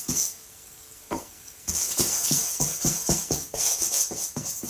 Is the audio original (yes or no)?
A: no